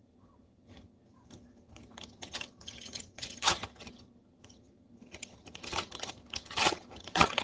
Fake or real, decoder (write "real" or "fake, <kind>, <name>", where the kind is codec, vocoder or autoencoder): fake, vocoder, HiFi-GAN